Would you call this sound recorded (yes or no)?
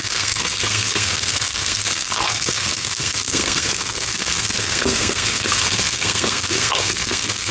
no